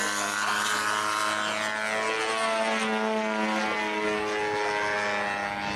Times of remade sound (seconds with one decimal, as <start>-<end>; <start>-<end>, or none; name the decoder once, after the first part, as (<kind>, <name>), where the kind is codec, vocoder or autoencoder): none